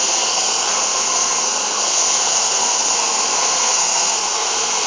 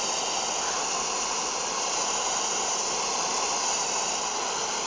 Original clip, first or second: second